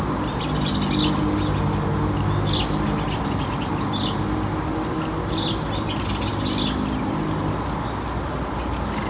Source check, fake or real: real